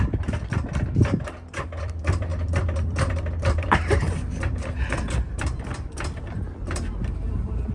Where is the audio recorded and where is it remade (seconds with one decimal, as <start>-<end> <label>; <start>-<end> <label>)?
0.0-7.7 remade